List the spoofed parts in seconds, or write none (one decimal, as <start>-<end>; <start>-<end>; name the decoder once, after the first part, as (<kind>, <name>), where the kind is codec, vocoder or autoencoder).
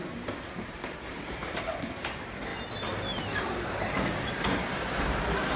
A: 0.0-2.5 (vocoder, BigVGAN v2); 4.3-5.6